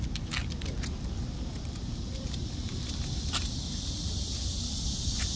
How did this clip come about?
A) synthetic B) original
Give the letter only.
B